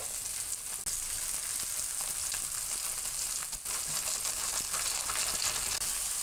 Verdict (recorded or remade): recorded